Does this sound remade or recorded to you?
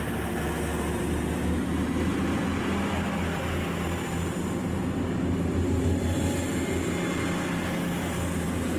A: recorded